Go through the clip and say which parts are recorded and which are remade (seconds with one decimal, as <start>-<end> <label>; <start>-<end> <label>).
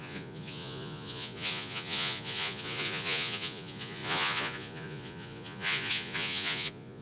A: 0.0-7.0 remade